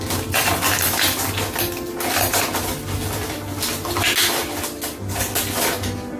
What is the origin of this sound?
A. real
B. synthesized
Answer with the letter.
A